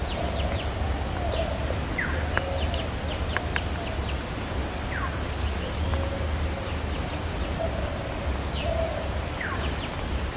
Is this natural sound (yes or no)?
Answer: yes